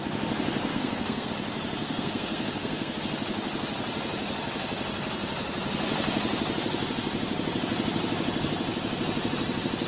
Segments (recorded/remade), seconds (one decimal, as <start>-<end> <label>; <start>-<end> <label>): 0.0-0.7 recorded; 0.7-1.3 remade; 1.3-1.8 recorded; 1.8-3.0 remade; 3.0-9.9 recorded